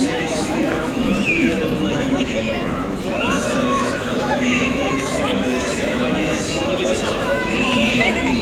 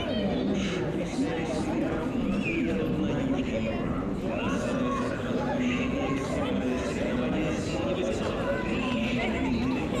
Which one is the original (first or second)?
second